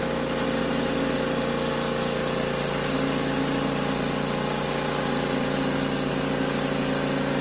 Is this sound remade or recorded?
recorded